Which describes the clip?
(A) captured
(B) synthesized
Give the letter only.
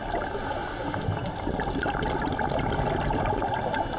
A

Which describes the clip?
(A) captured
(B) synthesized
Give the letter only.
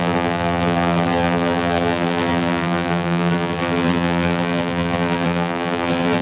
B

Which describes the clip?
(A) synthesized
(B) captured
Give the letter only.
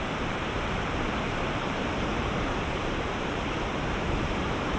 A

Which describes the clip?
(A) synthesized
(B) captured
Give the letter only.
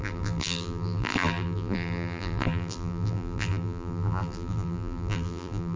A